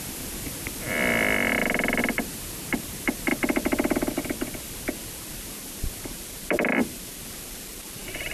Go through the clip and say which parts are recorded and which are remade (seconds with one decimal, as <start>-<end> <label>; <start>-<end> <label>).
0.0-8.3 recorded